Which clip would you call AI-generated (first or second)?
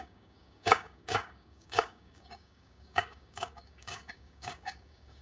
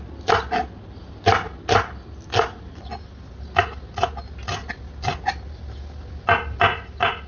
first